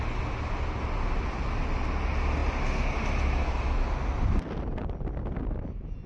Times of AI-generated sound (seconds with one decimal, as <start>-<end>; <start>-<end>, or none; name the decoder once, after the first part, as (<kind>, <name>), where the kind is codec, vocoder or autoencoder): none